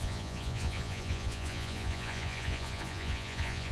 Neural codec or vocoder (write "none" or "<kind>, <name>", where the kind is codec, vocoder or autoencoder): vocoder, Vocos